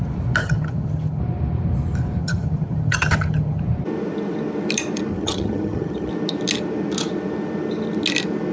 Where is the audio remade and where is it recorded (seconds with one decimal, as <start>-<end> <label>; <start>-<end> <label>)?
0.0-0.4 recorded; 0.4-1.2 remade; 1.2-2.2 recorded; 2.2-3.6 remade; 3.6-5.1 recorded; 5.1-6.1 remade; 6.1-8.5 recorded